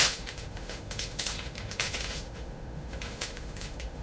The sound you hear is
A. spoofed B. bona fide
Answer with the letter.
A